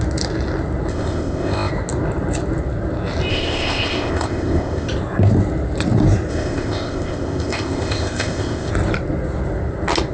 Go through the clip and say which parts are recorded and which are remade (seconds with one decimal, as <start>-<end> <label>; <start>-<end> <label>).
0.0-0.9 recorded; 0.9-1.7 remade; 1.7-3.3 recorded; 3.3-4.9 remade; 4.9-6.3 recorded; 6.3-8.7 remade; 8.7-10.1 recorded